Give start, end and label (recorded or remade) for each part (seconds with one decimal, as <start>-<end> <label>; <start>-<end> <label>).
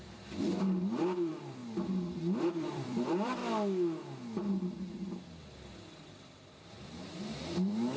0.0-1.6 remade; 1.6-2.5 recorded; 2.5-3.4 remade; 3.4-6.1 recorded; 6.1-8.0 remade